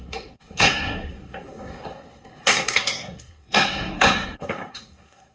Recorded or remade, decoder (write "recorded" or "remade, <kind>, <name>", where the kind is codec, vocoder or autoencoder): remade, codec, SNAC